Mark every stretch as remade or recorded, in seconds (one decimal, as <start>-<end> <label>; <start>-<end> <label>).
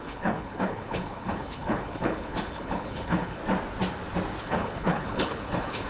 0.0-3.4 remade; 3.4-4.4 recorded; 4.4-5.9 remade